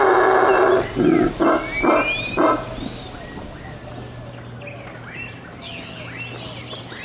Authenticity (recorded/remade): recorded